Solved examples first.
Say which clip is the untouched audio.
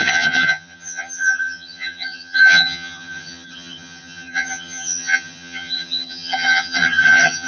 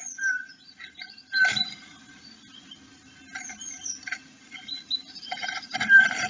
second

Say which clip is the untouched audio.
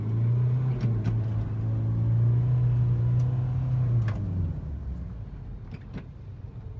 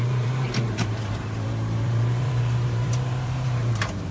first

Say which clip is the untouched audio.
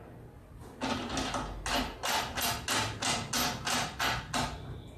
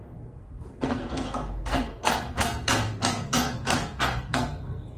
first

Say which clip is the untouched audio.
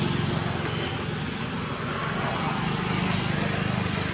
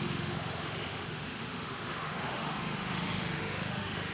first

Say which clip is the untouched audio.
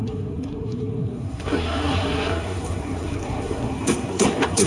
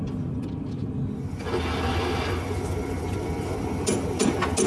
second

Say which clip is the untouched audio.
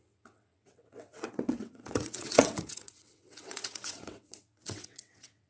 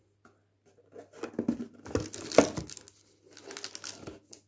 second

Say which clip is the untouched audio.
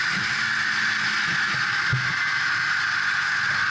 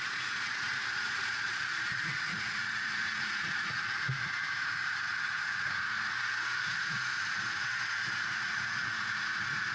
first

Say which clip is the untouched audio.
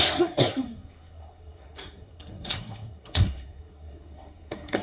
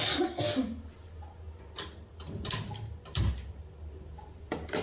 second